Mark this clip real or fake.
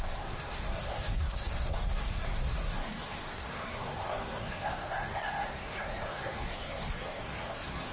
fake